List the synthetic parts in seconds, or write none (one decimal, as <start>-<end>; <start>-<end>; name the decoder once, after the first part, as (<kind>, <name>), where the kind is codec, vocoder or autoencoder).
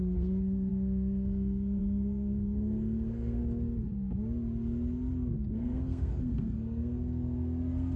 0.0-3.4 (codec, SNAC); 5.5-8.0